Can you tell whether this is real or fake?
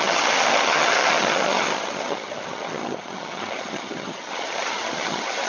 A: fake